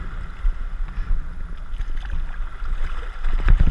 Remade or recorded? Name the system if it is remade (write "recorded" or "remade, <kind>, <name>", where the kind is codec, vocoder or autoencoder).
recorded